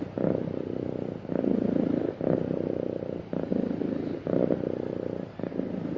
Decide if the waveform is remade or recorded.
recorded